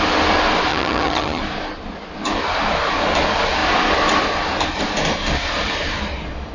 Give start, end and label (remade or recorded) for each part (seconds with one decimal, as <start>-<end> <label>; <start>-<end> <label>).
0.0-0.7 recorded; 0.7-1.4 remade; 1.4-6.5 recorded